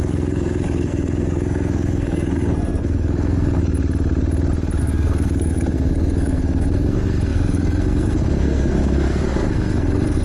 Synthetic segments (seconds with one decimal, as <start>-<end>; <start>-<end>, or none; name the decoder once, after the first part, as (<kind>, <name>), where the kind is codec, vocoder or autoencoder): 0.0-3.6 (codec, SNAC); 4.8-10.2